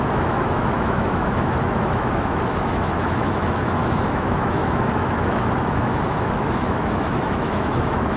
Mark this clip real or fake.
fake